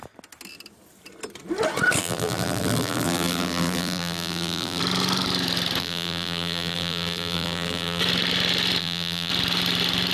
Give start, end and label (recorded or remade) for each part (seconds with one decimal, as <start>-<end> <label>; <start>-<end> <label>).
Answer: 0.0-2.0 recorded; 2.0-4.8 remade; 4.8-5.8 recorded; 5.8-8.0 remade; 8.0-8.8 recorded; 8.8-9.3 remade; 9.3-10.1 recorded